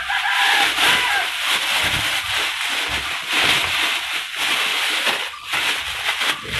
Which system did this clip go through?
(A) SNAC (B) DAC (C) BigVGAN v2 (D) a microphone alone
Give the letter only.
D